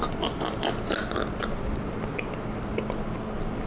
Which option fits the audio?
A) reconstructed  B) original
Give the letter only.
B